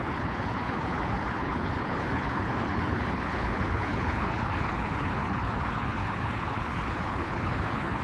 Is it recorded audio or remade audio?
remade